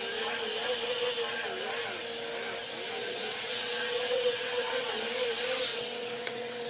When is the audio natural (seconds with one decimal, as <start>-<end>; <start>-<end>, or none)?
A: 0.0-3.0; 5.0-5.7